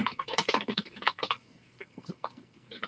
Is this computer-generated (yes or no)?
yes